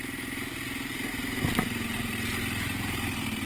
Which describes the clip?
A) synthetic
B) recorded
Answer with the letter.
B